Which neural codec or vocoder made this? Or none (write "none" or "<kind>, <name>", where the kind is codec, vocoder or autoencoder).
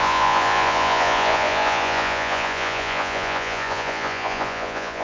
vocoder, Vocos